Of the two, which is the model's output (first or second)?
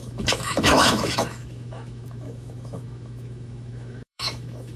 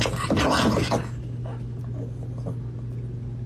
first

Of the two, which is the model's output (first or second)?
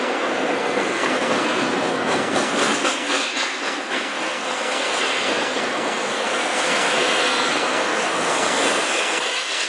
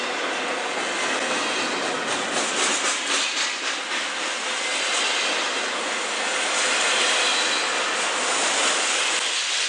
first